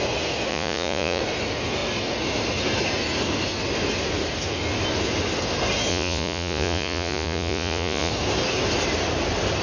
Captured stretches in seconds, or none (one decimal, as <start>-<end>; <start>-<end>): 0.0-0.5; 1.2-5.9; 8.1-9.6